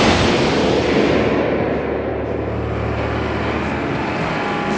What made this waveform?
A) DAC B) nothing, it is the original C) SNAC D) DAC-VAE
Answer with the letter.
B